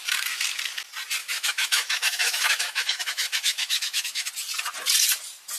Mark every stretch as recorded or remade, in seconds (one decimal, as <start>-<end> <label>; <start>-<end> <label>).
0.0-1.2 recorded; 1.2-4.3 remade; 4.3-5.6 recorded